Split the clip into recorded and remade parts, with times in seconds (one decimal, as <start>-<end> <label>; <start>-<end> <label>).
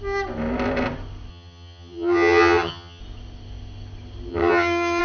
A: 0.0-1.3 recorded; 1.3-3.0 remade; 3.0-4.3 recorded; 4.3-5.0 remade